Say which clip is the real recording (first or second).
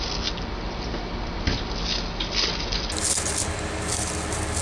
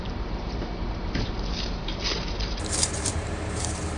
first